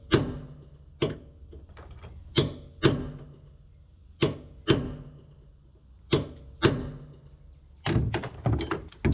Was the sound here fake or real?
real